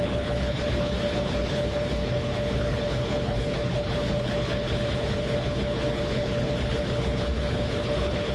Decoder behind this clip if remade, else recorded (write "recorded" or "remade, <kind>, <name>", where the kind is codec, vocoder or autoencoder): remade, codec, HILCodec